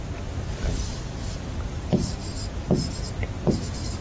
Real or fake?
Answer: fake